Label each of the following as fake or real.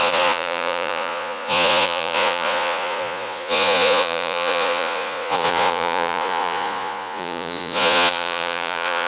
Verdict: fake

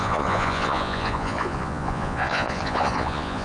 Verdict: fake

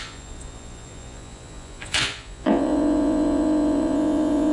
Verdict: fake